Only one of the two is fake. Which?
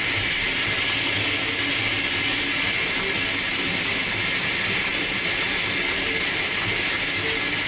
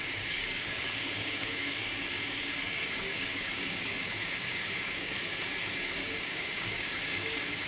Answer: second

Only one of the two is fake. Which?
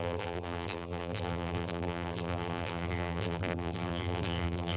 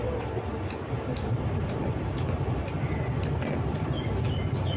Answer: first